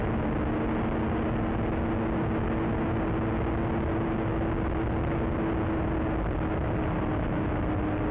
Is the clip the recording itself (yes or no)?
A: yes